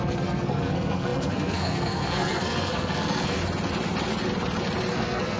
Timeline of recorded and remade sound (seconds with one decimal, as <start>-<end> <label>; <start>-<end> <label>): 0.0-3.4 remade; 3.4-4.9 recorded; 4.9-5.4 remade